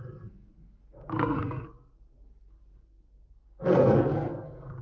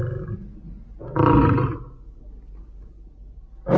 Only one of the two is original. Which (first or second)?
second